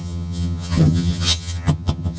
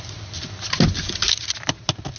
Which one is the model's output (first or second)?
first